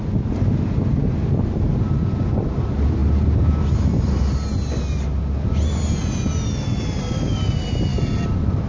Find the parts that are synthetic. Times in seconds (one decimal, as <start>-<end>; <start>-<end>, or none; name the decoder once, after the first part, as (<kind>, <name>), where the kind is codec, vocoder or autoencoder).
none